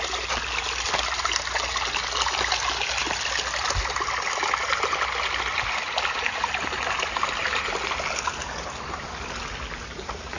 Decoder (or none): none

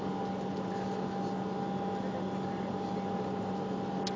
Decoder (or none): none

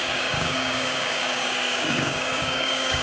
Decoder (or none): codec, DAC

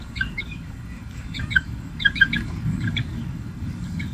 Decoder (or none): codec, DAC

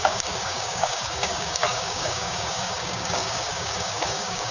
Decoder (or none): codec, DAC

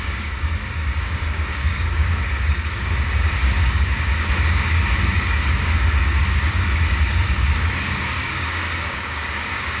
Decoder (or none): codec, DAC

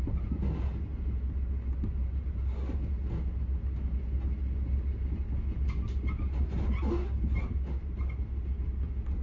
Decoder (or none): none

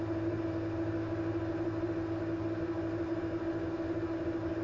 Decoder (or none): none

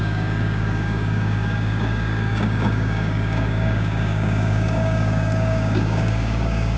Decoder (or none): codec, DAC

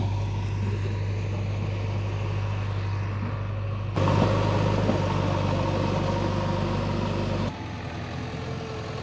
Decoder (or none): none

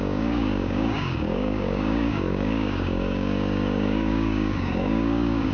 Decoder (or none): codec, DAC